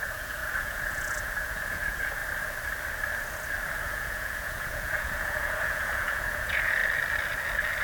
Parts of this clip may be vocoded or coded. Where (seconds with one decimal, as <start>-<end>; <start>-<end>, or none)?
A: 0.0-2.2; 3.8-6.8